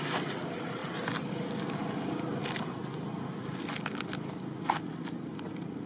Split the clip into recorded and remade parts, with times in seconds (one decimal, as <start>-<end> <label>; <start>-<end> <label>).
0.0-5.9 recorded